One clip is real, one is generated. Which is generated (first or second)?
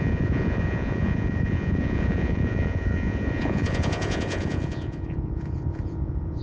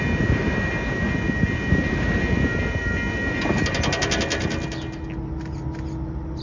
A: first